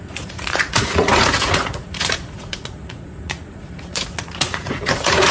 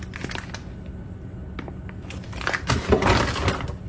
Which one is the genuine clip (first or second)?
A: second